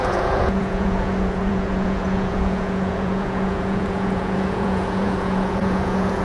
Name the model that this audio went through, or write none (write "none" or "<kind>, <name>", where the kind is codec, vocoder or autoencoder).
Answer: vocoder, Vocos